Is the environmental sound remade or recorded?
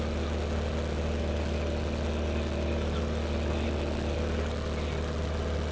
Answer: recorded